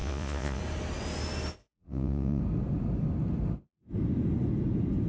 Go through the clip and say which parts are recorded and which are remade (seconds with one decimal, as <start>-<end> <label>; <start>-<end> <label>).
0.0-0.6 remade; 0.6-1.6 recorded; 1.6-2.4 remade; 2.4-5.1 recorded